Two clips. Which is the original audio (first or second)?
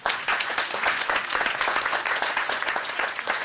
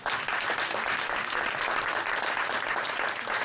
second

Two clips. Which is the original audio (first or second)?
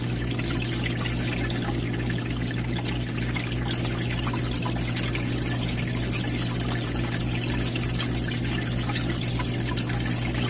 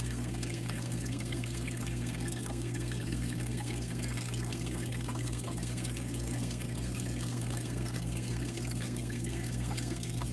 first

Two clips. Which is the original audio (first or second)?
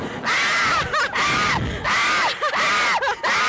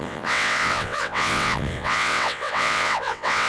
first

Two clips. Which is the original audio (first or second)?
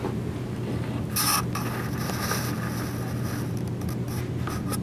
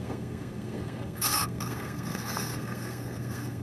first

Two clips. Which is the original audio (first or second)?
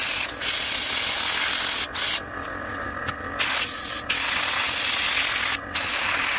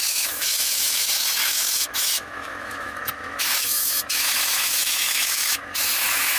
first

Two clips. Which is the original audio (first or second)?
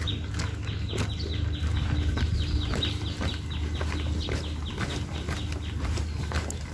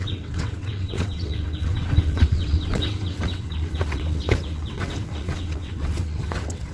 first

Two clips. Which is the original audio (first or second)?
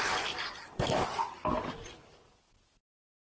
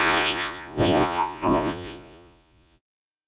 first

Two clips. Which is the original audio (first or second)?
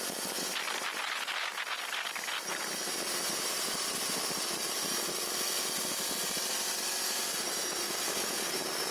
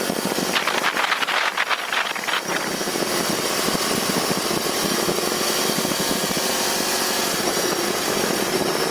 first